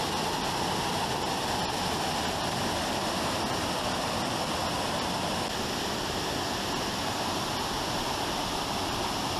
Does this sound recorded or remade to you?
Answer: recorded